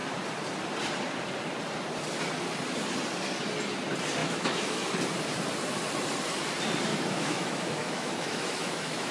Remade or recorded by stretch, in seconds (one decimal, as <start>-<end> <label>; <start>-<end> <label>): 0.0-4.2 recorded; 4.2-4.9 remade; 4.9-6.9 recorded; 6.9-9.1 remade